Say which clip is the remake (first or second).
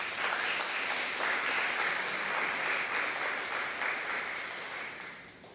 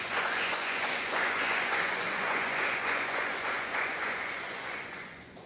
second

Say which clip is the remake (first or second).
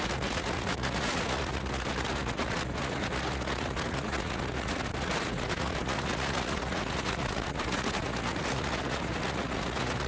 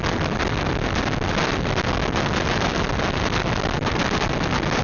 first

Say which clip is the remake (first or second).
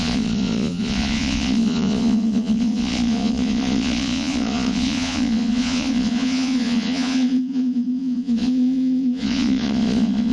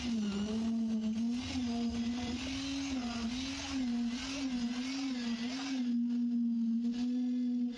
first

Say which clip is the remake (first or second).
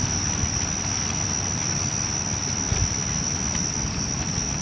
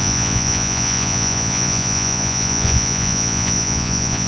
second